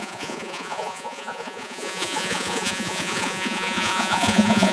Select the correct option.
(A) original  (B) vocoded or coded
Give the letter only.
B